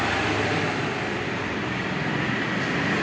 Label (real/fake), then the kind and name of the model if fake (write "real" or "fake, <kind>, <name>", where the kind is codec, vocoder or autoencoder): real